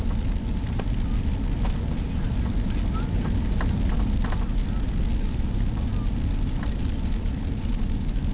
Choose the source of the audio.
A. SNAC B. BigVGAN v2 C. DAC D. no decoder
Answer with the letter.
D